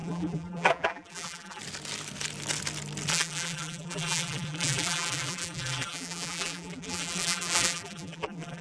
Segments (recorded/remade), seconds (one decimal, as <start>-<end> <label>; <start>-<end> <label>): 0.0-1.6 remade; 1.6-3.1 recorded; 3.1-8.6 remade